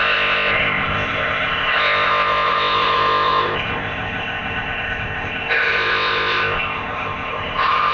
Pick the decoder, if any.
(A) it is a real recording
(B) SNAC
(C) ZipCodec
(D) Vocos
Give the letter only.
C